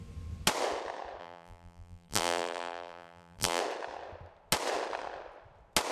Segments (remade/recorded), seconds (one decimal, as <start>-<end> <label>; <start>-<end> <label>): 0.0-1.2 recorded; 1.2-3.6 remade; 3.6-5.9 recorded